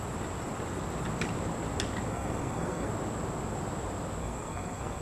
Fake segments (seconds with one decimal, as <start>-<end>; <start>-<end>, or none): 2.1-2.9; 4.2-5.0